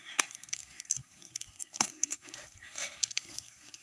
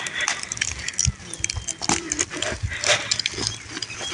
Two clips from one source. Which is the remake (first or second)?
first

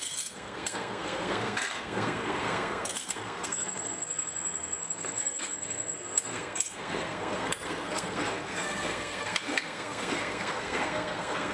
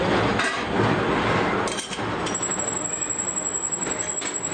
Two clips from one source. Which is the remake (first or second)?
first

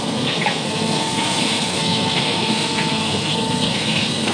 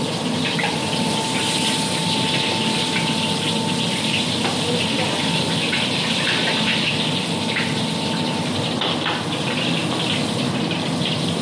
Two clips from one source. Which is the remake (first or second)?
first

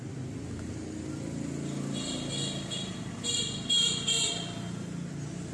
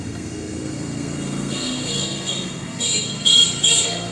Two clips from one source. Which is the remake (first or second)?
second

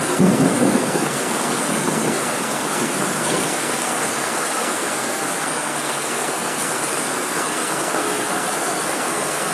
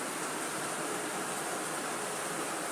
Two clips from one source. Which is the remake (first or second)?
first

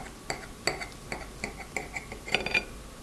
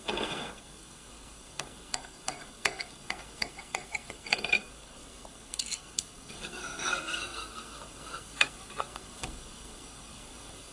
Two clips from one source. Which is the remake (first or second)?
second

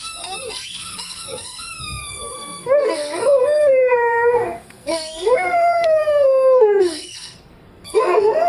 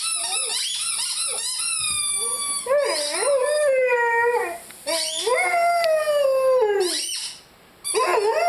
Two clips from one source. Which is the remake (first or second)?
first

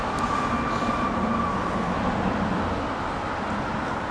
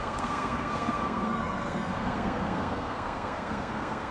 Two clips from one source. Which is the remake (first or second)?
second